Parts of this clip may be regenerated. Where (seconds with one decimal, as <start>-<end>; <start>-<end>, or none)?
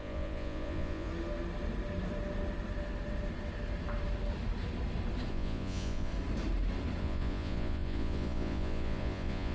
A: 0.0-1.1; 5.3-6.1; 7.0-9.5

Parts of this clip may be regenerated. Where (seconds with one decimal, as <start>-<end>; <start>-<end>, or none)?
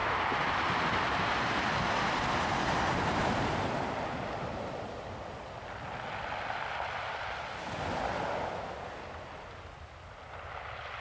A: none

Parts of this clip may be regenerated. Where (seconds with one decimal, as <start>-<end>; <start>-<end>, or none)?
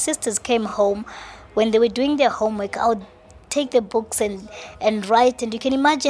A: none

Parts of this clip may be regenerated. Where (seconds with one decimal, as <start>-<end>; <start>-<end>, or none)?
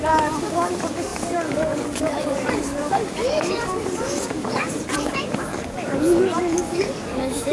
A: 0.0-7.5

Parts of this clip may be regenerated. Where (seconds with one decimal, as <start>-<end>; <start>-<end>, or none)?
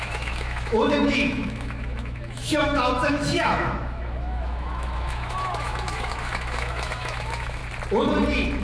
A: 0.0-7.6